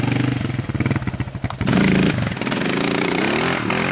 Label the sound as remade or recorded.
recorded